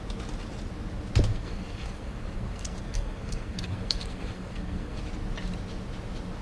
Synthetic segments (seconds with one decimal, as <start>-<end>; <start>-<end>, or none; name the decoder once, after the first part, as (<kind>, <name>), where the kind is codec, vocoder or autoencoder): 1.3-5.0 (codec, SNAC)